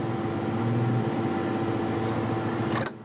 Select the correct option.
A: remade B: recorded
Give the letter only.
B